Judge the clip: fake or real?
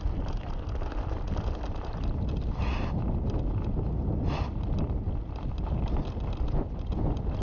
real